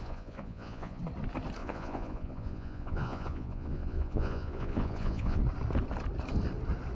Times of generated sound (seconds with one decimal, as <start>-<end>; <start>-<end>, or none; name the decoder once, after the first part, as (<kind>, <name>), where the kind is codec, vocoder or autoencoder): 0.0-1.0 (vocoder, Vocos); 1.6-5.4